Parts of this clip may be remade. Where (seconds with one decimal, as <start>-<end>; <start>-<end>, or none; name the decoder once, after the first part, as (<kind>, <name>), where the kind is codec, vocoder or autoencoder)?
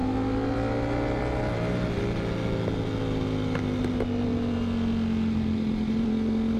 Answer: none